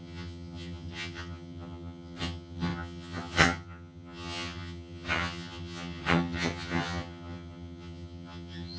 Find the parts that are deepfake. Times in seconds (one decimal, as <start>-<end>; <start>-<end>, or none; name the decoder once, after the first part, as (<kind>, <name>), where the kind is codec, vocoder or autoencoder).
0.0-8.8 (vocoder, HiFi-GAN)